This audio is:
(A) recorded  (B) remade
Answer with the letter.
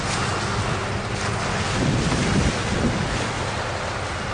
A